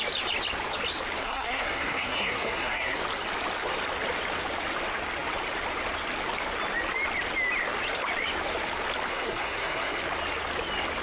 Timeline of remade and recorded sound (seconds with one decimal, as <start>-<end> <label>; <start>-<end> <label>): 0.0-1.2 recorded; 1.2-3.0 remade; 3.0-9.1 recorded; 9.1-10.0 remade; 10.0-11.0 recorded